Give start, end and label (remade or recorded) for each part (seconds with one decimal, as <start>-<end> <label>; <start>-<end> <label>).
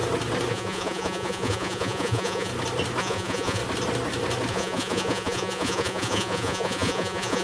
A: 0.0-0.5 recorded; 0.5-2.5 remade; 2.5-3.0 recorded; 3.0-3.6 remade; 3.6-4.5 recorded; 4.5-7.4 remade